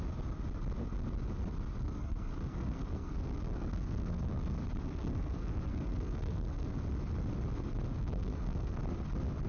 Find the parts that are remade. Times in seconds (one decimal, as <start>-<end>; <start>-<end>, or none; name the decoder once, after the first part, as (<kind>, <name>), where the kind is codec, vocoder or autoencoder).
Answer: 1.8-6.8 (codec, SNAC); 7.9-8.8